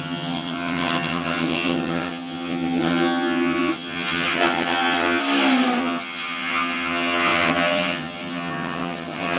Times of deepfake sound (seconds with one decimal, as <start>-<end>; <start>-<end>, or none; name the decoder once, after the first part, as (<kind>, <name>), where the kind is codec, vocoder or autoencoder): 0.0-5.2 (vocoder, HiFi-GAN); 5.8-9.4